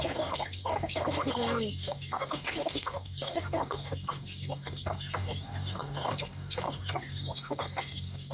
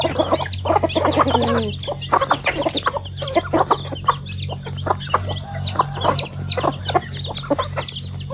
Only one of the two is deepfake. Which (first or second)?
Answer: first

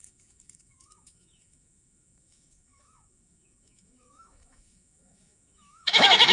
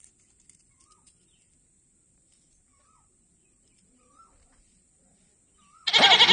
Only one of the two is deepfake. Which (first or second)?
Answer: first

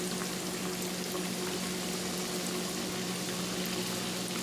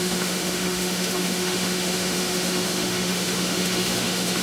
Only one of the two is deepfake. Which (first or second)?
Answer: second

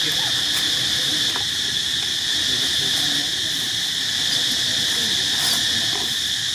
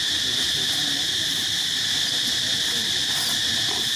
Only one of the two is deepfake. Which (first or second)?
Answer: second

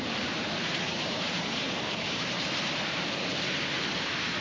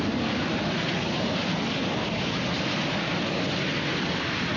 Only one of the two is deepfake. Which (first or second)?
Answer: first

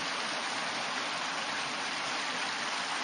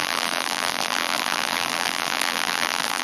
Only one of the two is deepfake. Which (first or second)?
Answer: second